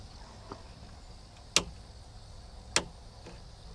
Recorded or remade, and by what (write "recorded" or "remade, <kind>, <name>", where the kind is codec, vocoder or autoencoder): recorded